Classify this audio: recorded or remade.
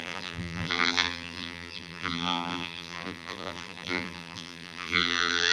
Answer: remade